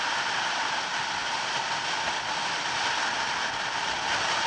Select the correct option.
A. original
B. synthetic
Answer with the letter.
A